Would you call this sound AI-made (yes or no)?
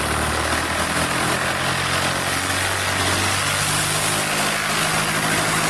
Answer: no